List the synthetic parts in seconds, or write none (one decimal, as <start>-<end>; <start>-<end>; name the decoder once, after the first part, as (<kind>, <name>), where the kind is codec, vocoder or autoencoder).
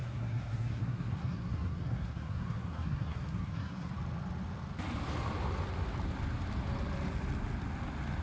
0.0-3.9 (codec, SNAC)